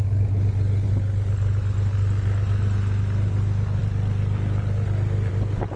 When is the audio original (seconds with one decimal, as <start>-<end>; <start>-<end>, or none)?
0.0-5.8